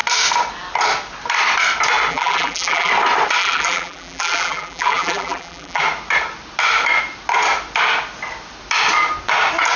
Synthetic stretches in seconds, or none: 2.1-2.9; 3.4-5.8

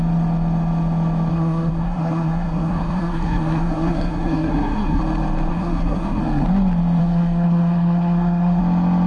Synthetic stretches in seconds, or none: 1.3-5.0; 5.5-6.2; 7.0-8.6

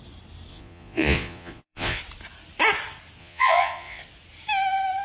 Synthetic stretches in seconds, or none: 0.5-2.0; 3.2-4.0